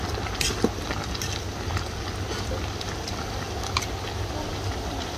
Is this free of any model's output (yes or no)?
yes